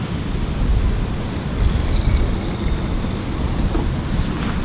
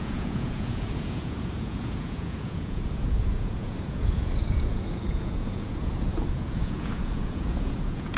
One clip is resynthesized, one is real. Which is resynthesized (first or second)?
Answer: second